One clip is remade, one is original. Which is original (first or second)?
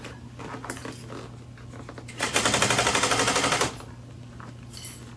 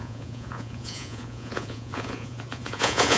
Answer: first